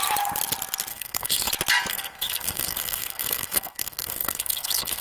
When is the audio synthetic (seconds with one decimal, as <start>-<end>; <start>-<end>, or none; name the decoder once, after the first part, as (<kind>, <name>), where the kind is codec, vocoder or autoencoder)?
0.9-1.5 (codec, SNAC); 1.9-5.0